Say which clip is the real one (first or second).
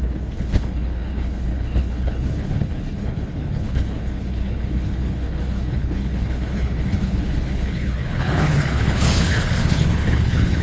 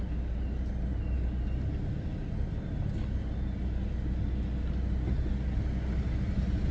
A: second